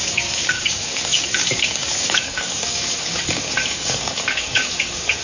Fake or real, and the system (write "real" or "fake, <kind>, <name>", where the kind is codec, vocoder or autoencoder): fake, codec, DAC